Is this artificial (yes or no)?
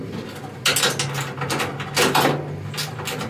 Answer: no